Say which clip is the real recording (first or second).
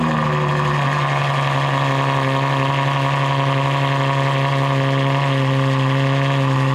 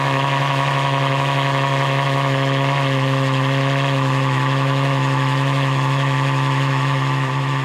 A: first